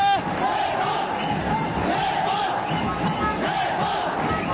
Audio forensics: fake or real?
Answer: real